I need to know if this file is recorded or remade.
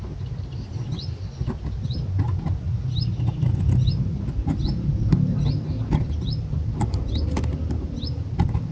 recorded